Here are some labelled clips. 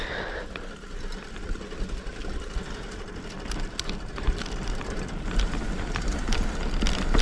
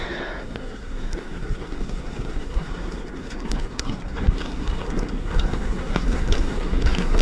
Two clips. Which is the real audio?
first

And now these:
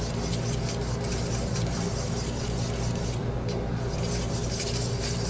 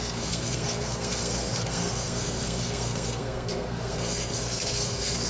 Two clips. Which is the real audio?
first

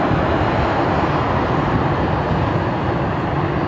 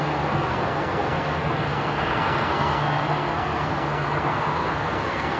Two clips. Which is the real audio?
first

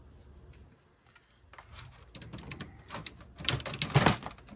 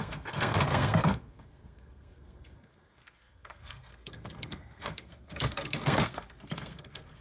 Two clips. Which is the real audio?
first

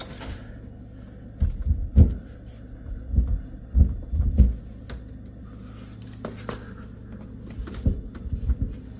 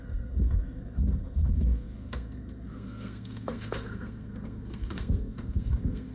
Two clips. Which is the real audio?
first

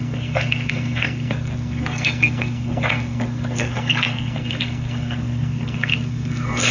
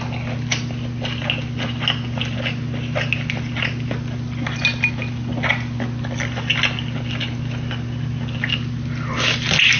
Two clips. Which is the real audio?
second